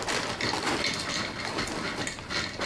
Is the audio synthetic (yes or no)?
no